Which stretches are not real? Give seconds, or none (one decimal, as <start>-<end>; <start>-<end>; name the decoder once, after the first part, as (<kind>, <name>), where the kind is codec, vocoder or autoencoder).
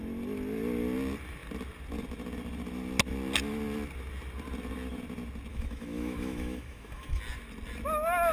5.5-7.2 (autoencoder, DAC-VAE)